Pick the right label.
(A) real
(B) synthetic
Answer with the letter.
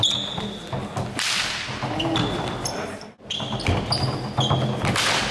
A